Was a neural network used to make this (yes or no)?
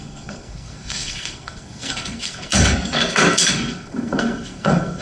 yes